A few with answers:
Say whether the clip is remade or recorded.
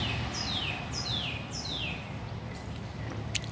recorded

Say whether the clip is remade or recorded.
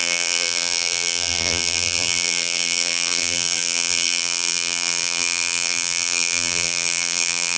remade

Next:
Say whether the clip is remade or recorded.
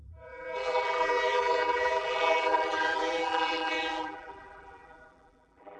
remade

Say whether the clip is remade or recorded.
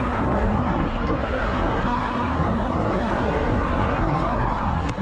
remade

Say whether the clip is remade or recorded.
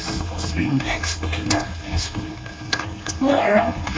remade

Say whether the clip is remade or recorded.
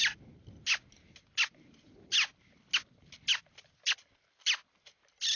recorded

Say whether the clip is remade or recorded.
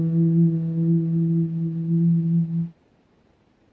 recorded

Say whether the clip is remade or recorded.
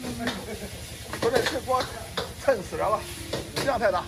recorded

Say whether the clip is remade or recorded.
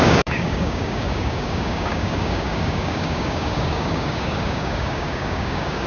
remade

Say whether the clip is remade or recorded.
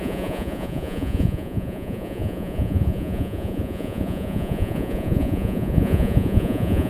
remade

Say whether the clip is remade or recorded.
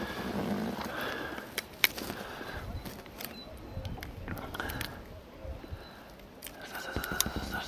recorded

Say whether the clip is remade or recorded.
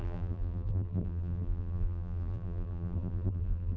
remade